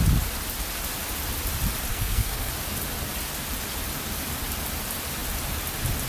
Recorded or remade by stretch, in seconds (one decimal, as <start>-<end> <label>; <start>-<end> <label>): 0.0-1.9 recorded; 1.9-2.5 remade; 2.5-6.1 recorded